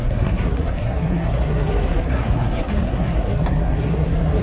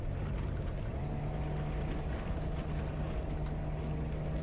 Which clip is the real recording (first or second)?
second